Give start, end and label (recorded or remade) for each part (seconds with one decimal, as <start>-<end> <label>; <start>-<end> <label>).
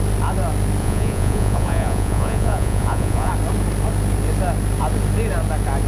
0.0-0.8 recorded; 0.8-3.3 remade; 3.3-5.9 recorded